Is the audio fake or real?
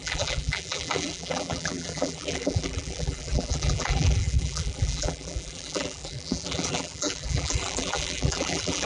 fake